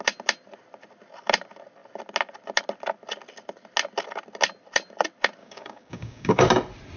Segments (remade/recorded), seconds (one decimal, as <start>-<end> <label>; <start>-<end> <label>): 0.0-5.4 recorded; 5.4-6.4 remade; 6.4-7.0 recorded